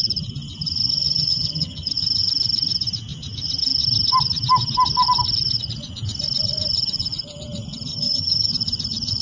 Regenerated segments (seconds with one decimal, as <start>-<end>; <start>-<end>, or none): 1.1-1.9; 7.9-8.5

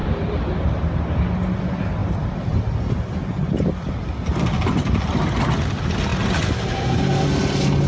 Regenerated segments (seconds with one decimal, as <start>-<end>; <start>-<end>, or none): none